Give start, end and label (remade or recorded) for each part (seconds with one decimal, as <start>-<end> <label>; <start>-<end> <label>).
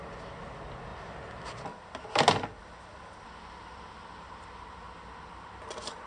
0.0-6.1 recorded